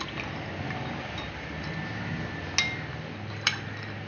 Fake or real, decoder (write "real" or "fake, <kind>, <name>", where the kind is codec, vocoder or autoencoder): real